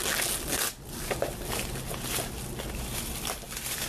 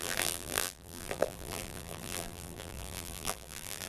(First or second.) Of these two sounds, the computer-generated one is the second